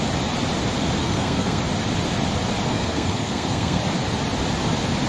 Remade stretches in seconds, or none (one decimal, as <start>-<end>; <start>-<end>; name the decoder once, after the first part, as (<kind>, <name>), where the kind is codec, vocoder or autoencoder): 1.0-1.6 (codec, SNAC); 2.7-3.8